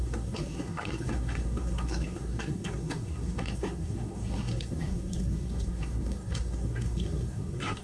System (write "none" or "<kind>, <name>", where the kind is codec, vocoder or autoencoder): codec, SNAC